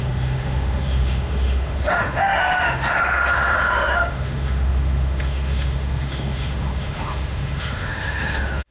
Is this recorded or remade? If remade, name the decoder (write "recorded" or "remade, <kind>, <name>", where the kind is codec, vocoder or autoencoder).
remade, autoencoder, DAC-VAE